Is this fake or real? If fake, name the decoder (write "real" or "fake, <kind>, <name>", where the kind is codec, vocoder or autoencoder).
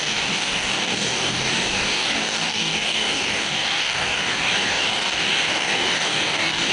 fake, codec, DAC